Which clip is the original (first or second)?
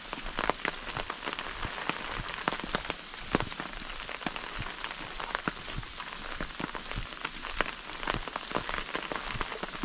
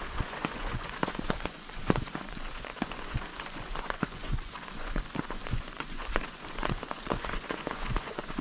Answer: first